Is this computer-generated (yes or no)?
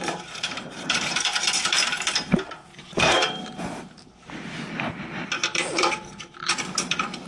yes